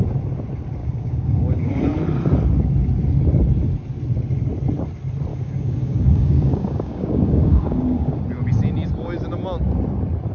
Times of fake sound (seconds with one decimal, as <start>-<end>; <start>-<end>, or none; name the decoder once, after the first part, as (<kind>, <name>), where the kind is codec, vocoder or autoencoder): 0.8-1.7 (codec, DAC); 5.3-8.2